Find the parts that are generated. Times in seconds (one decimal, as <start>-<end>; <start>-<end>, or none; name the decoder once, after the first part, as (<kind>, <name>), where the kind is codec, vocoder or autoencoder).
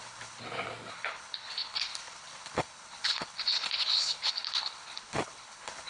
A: 0.0-0.4 (codec, HILCodec); 0.9-5.9